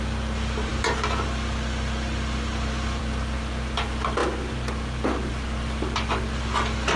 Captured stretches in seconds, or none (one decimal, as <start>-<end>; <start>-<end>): 0.0-7.0